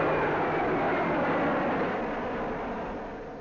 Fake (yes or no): no